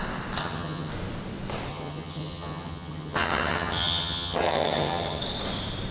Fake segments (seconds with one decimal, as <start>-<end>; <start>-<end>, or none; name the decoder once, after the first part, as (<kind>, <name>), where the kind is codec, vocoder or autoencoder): 0.4-0.9 (vocoder, HiFi-GAN); 1.7-5.2